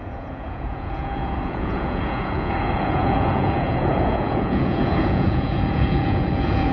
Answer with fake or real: fake